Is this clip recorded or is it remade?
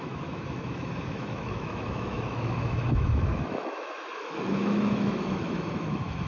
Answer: remade